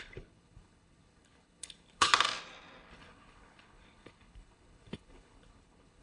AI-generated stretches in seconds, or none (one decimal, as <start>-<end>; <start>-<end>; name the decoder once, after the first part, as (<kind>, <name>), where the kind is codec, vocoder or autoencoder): 0.0-2.1 (codec, HILCodec); 2.9-6.0